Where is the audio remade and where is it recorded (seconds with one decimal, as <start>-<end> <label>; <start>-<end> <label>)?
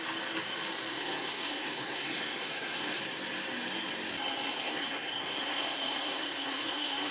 0.0-0.9 recorded; 0.9-3.0 remade; 3.0-4.5 recorded; 4.5-7.1 remade